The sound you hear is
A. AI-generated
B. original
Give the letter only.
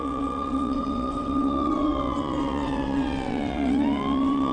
A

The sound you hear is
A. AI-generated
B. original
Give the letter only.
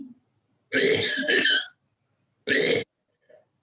B